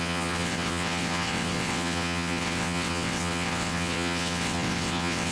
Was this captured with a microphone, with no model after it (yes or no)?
no